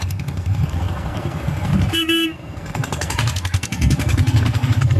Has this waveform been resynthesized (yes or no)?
yes